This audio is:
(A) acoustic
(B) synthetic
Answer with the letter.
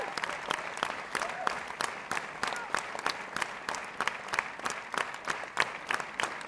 A